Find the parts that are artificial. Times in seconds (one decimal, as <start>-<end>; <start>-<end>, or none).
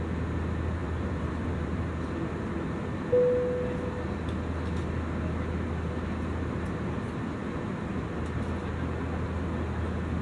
0.8-1.8